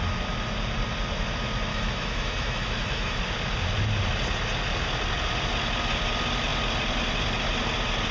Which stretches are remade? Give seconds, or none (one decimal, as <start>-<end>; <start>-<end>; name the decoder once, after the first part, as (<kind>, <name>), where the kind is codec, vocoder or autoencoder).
1.7-3.2 (autoencoder, DAC-VAE)